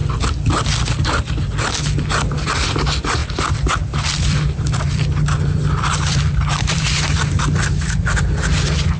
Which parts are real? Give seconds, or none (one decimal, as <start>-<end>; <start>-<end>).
0.0-3.2; 7.3-9.0

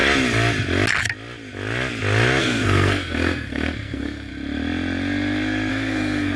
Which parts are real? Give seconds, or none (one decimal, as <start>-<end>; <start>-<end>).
0.0-2.4; 4.3-5.7

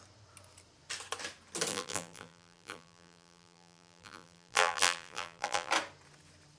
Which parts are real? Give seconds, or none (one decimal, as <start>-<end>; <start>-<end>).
0.0-1.7; 5.7-6.6

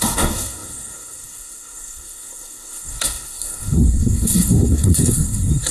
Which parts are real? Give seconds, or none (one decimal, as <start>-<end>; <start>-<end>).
none

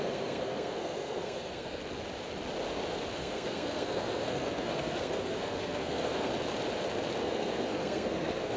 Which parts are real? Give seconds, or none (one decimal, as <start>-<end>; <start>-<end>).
1.8-3.2; 6.3-7.2

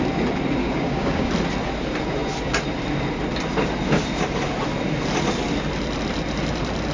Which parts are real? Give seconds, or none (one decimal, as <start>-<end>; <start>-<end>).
0.0-0.6; 1.3-6.9

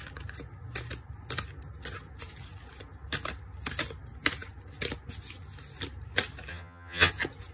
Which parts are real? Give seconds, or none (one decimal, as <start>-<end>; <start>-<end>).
0.0-6.5; 7.1-7.5